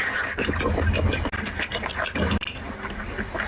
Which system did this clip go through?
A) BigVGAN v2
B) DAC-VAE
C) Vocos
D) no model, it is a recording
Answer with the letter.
D